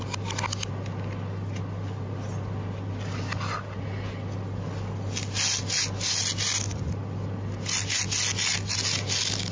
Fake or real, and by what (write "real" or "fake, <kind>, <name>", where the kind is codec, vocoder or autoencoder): real